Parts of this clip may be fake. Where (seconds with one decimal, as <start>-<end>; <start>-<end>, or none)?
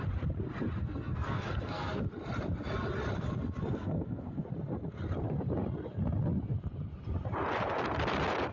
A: 0.8-2.0; 3.7-4.5